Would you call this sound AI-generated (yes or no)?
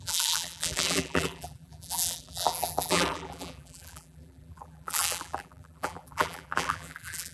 yes